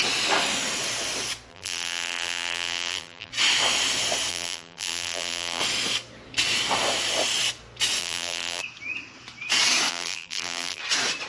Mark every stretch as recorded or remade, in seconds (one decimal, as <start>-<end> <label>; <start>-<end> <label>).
0.0-1.5 recorded; 1.5-3.3 remade; 3.3-4.3 recorded; 4.3-5.6 remade; 5.6-8.0 recorded; 8.0-8.6 remade; 8.6-9.9 recorded; 9.9-10.8 remade; 10.8-11.3 recorded